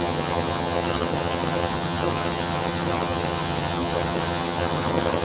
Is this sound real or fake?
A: fake